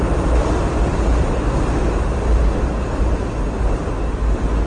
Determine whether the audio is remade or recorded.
recorded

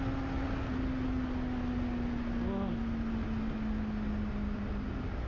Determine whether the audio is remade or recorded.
recorded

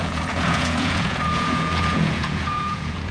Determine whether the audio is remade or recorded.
remade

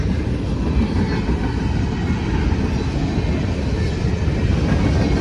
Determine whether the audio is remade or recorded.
recorded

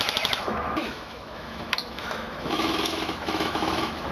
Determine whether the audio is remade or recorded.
remade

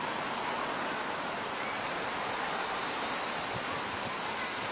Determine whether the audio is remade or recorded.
recorded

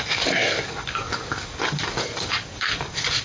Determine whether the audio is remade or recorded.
remade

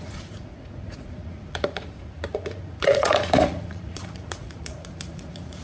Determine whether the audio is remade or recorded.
remade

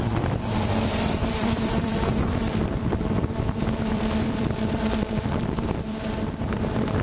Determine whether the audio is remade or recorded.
remade